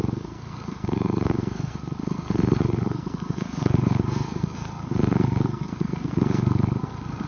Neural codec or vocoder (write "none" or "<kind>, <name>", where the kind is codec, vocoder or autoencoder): codec, SNAC